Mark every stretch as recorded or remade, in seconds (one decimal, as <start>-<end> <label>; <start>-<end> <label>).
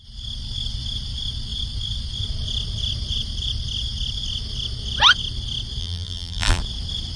0.0-5.8 recorded; 5.8-6.6 remade; 6.6-7.2 recorded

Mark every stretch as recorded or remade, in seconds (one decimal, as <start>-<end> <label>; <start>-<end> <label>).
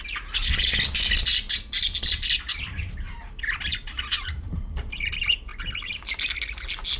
0.0-3.7 recorded; 3.7-5.1 remade; 5.1-7.0 recorded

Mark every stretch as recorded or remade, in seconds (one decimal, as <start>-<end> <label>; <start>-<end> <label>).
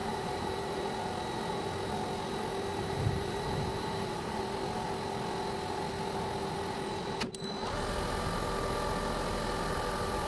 0.0-0.8 remade; 0.8-2.7 recorded; 2.7-4.4 remade; 4.4-10.3 recorded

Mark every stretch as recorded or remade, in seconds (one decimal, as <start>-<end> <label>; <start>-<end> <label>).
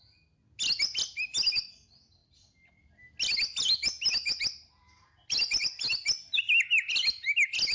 0.0-7.7 recorded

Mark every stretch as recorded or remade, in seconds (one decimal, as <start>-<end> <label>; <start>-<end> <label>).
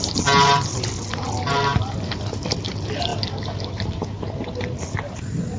0.0-5.6 recorded